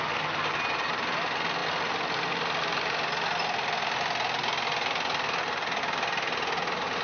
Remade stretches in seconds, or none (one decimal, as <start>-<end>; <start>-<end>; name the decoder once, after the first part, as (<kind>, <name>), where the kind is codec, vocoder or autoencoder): none